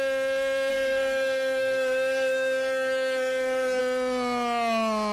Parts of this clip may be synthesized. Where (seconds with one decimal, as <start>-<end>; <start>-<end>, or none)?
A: 0.7-3.8